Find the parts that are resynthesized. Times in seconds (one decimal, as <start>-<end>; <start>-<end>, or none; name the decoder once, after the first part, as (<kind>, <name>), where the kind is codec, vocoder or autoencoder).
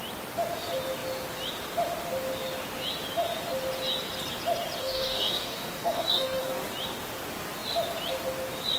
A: 4.8-6.4 (codec, DAC)